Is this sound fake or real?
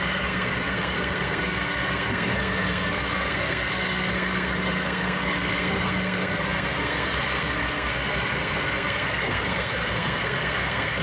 fake